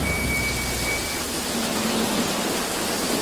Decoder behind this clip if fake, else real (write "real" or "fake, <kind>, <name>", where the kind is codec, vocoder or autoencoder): real